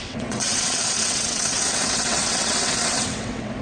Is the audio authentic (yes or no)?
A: no